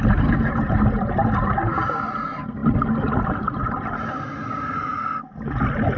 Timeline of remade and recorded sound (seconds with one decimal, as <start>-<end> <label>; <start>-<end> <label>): 0.0-6.0 recorded